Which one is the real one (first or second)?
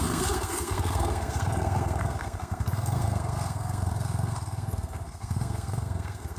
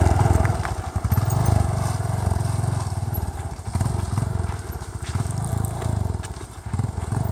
second